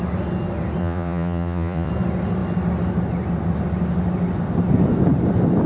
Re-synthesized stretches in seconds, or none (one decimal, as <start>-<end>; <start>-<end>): 0.8-1.9